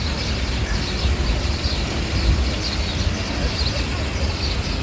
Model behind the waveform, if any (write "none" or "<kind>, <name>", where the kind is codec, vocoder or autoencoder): vocoder, BigVGAN v2